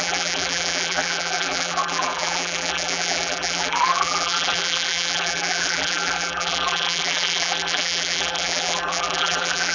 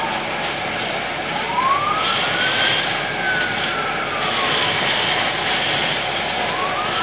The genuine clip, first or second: second